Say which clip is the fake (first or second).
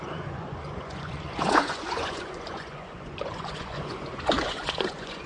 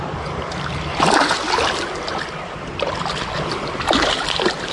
first